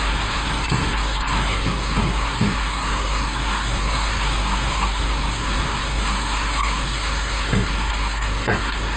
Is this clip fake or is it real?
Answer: fake